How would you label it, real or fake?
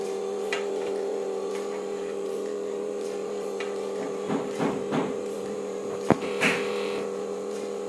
fake